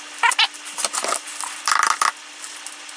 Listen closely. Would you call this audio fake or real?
real